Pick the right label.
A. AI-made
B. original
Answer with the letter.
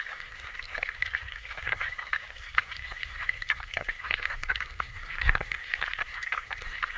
A